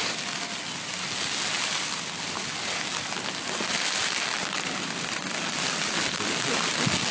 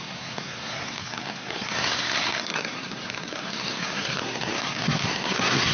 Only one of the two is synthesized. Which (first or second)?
second